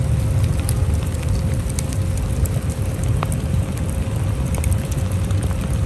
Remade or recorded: remade